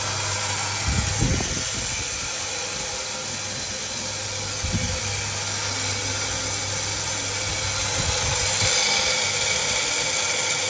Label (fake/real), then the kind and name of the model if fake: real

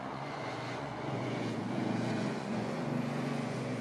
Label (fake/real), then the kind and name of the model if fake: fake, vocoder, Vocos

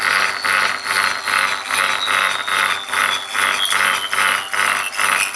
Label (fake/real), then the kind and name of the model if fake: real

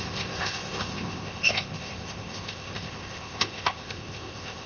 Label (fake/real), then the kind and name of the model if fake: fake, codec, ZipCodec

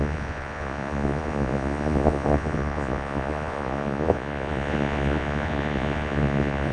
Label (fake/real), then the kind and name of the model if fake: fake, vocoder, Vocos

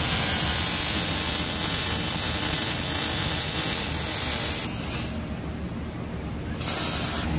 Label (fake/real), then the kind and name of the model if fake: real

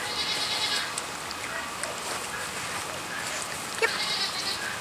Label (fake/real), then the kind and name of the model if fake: real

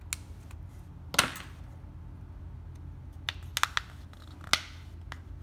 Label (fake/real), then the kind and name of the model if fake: real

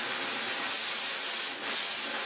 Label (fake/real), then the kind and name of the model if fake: real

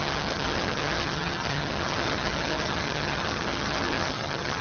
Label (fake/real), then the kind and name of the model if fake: fake, vocoder, HiFi-GAN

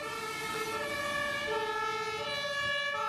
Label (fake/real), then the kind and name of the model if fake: real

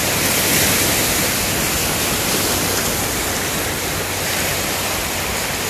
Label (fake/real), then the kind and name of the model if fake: real